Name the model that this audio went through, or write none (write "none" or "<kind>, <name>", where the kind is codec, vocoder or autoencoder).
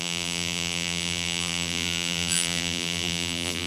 vocoder, BigVGAN v2